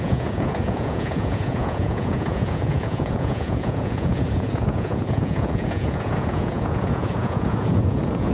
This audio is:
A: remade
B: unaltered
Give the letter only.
A